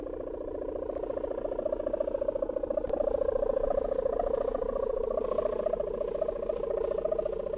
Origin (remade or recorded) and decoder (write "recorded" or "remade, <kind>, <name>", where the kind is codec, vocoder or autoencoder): recorded